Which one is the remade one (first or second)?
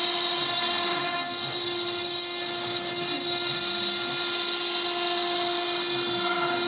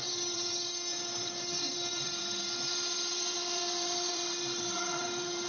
second